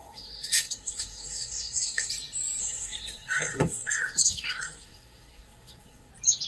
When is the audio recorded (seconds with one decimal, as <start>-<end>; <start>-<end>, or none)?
2.1-2.6; 6.1-6.5